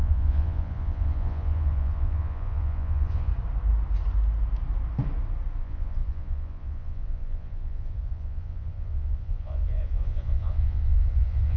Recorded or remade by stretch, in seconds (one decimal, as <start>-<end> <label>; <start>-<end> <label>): 0.0-3.3 remade; 3.3-5.6 recorded; 5.6-11.6 remade